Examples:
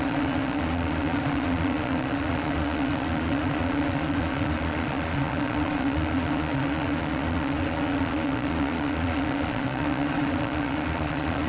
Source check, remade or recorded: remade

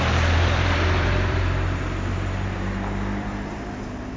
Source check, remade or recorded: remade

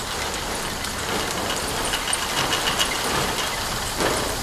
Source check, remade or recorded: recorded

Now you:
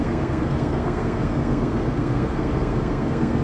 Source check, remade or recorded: remade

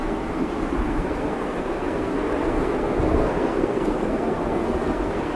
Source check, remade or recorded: remade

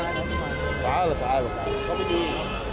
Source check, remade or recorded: recorded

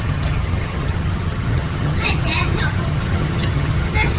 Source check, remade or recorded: remade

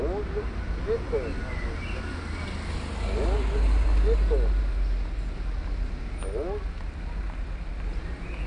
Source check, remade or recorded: recorded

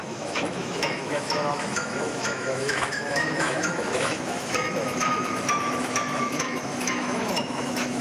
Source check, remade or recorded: remade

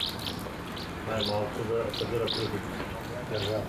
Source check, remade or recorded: recorded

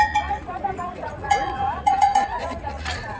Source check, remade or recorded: remade